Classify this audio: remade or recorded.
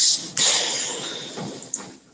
recorded